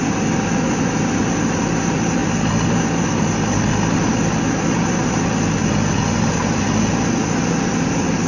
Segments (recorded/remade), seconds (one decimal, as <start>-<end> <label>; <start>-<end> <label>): 0.0-8.3 recorded